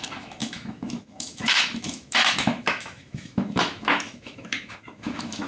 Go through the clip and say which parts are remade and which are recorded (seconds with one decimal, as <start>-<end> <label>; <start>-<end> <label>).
0.0-5.5 remade